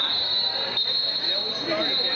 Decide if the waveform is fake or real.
real